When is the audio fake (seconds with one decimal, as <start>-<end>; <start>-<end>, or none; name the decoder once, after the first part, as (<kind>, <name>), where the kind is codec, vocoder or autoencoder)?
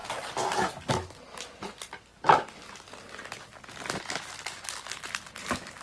none